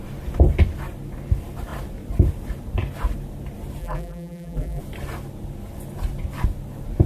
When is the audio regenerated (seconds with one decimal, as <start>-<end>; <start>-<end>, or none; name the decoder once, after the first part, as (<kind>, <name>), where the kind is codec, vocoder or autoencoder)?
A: 3.8-4.8 (vocoder, BigVGAN v2)